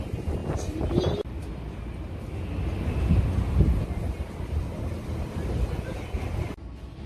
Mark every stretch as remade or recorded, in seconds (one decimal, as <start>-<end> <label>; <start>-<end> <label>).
0.0-7.1 recorded